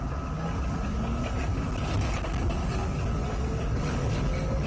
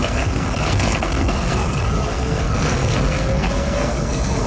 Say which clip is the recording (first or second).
first